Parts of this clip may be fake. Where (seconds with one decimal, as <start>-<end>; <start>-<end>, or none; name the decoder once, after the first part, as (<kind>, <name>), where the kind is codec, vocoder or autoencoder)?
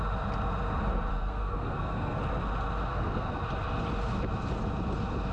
1.1-2.2 (codec, SNAC); 2.9-3.4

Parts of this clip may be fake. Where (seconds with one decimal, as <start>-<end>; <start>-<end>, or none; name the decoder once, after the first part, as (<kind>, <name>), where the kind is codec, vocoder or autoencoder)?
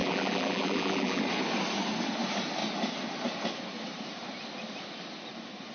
0.0-1.2 (vocoder, BigVGAN v2)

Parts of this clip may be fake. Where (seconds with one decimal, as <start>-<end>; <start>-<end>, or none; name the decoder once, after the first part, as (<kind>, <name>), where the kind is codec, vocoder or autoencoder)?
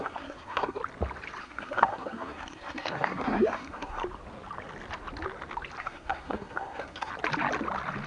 0.0-0.8 (codec, SNAC); 1.4-4.0; 5.8-7.1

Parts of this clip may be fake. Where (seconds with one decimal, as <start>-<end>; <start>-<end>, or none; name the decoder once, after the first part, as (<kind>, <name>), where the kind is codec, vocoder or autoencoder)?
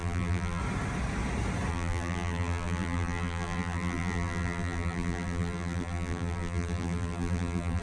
0.0-0.6 (vocoder, BigVGAN v2); 1.7-7.8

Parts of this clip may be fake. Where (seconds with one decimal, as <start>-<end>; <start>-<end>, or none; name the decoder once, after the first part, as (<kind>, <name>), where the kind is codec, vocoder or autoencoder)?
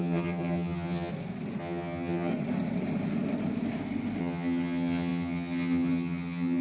0.0-1.1 (vocoder, HiFi-GAN); 1.6-2.3; 4.2-6.6